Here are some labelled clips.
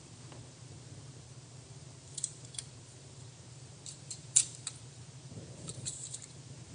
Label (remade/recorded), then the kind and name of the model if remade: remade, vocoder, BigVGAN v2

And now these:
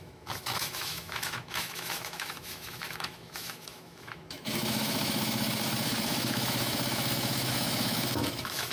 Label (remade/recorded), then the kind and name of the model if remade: remade, autoencoder, DAC-VAE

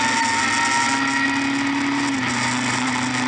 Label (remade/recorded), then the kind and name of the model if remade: recorded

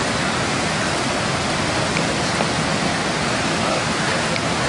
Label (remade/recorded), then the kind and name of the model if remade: recorded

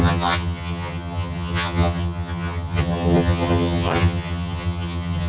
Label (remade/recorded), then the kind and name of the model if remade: remade, vocoder, HiFi-GAN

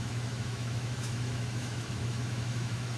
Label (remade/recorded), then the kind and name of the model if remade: remade, autoencoder, DAC-VAE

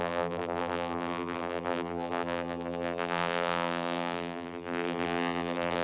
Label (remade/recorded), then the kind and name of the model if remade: remade, vocoder, BigVGAN v2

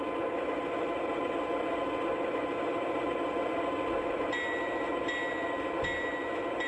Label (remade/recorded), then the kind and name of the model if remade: recorded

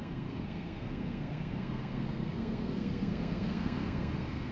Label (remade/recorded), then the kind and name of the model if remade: remade, codec, SNAC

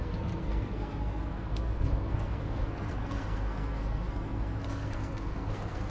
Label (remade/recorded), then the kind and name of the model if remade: remade, codec, SNAC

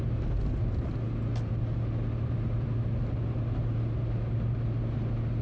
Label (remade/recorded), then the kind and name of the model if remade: recorded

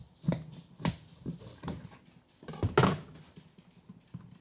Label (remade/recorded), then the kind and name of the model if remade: recorded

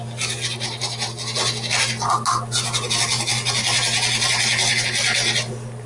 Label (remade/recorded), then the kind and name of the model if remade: recorded